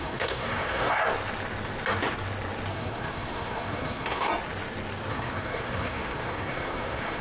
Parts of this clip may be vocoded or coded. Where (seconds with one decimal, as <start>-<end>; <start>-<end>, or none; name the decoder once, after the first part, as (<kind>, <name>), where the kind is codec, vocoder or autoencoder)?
0.0-1.0 (codec, SNAC); 2.7-4.3; 5.1-7.2